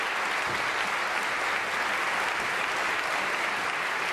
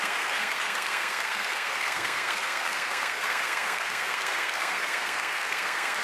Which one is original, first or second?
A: first